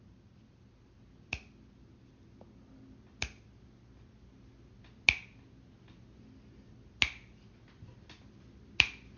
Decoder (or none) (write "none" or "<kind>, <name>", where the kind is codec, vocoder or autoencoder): none